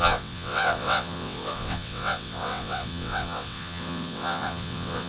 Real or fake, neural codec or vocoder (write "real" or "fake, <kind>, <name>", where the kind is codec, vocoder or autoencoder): fake, vocoder, WaveNeXt